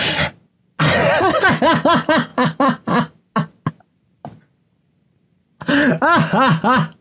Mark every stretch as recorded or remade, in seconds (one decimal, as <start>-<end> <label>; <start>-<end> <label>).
0.0-7.0 recorded